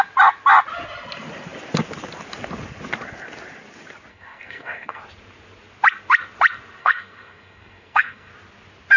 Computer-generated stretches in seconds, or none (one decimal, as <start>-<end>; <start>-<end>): 4.1-5.0; 6.8-8.3